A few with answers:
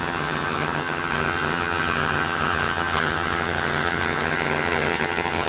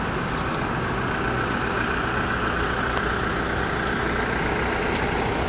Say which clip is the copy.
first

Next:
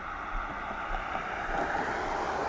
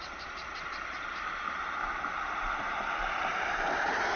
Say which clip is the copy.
second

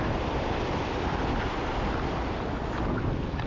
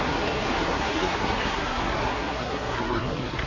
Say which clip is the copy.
second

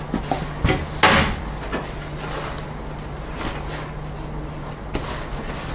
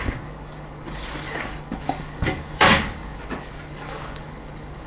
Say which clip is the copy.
second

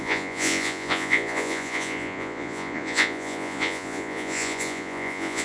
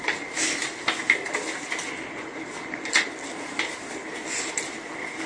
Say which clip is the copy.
first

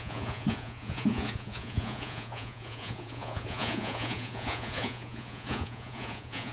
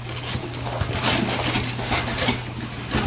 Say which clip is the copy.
first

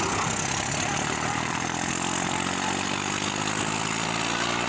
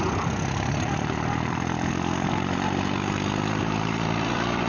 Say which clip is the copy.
second